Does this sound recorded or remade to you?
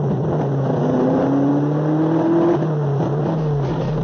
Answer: recorded